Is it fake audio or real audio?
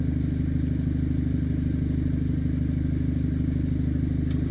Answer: real